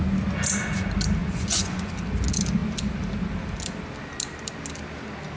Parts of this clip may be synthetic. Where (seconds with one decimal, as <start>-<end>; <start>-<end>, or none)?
1.2-1.9